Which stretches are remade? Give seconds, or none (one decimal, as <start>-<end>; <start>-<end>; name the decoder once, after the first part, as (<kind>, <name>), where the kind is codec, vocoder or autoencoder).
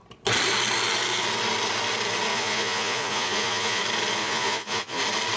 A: 2.3-3.8 (vocoder, Vocos); 4.2-5.0